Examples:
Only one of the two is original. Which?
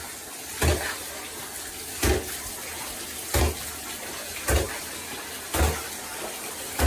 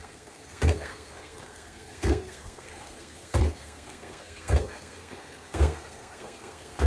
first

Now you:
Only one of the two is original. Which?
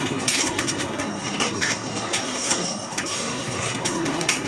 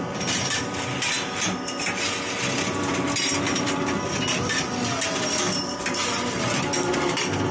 second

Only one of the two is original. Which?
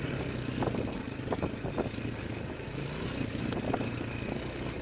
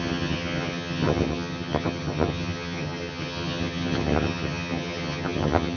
first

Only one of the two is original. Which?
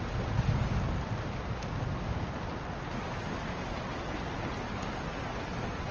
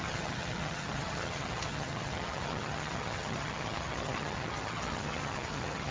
first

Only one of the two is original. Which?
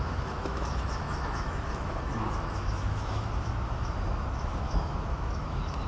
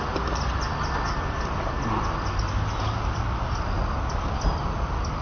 second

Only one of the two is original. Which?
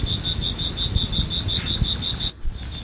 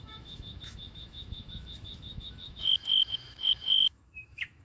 first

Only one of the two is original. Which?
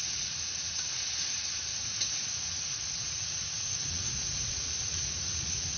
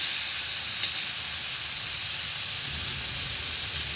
second